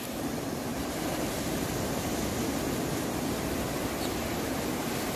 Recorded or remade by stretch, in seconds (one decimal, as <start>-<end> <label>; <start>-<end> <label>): 0.0-0.7 recorded; 0.7-1.9 remade; 1.9-5.2 recorded